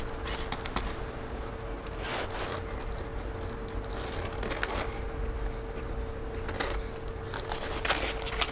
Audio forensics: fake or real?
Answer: real